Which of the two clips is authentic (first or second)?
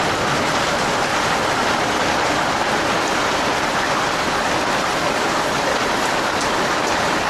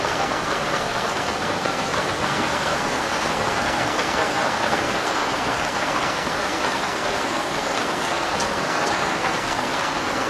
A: first